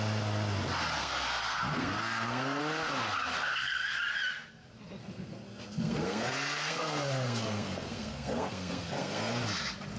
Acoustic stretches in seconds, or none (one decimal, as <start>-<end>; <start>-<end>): 0.0-1.0; 2.6-3.5; 4.0-5.0; 9.3-10.0